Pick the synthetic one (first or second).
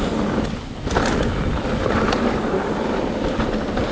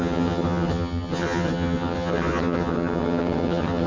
second